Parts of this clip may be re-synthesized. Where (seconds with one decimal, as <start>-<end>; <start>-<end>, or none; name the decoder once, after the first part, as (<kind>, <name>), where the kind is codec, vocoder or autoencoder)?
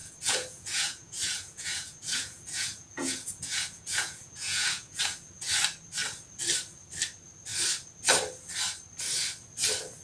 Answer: 0.0-5.0 (vocoder, Vocos)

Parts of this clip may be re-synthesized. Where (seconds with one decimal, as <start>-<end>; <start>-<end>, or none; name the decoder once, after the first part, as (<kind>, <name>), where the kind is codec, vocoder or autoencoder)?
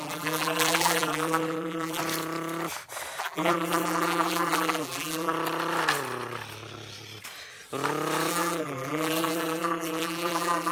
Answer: 0.0-2.0 (vocoder, BigVGAN v2); 3.2-5.3; 8.3-10.7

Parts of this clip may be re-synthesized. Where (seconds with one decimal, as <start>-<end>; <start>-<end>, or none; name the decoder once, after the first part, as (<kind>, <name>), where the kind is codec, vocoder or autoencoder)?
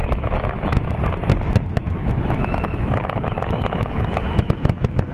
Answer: 0.0-0.9 (autoencoder, DAC-VAE); 2.0-5.1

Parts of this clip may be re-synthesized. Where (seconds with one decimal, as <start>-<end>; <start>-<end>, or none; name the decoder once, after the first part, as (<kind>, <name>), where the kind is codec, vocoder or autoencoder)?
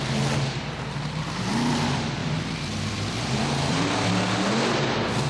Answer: 2.2-4.1 (vocoder, BigVGAN v2)